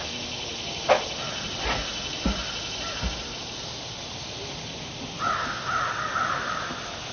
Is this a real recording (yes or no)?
yes